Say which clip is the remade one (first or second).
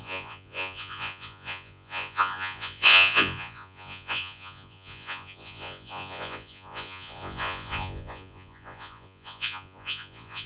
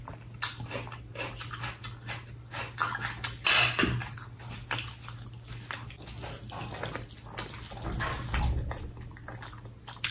first